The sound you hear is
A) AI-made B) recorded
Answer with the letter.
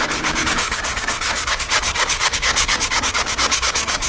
A